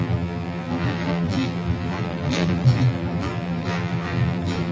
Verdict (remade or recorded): remade